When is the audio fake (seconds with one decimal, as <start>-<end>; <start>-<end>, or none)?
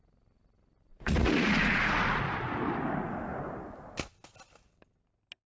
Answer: 0.9-2.2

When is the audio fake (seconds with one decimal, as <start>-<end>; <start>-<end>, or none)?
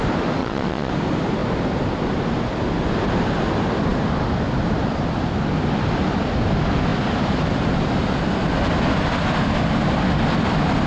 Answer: 0.4-0.9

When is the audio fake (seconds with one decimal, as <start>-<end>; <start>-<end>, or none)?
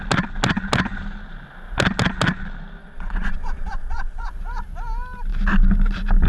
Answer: 2.8-4.3